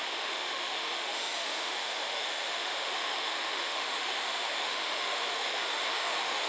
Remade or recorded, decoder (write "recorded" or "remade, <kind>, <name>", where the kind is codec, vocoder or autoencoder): remade, autoencoder, DAC-VAE